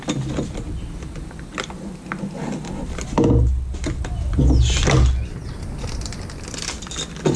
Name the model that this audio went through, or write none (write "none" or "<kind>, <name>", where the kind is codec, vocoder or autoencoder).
none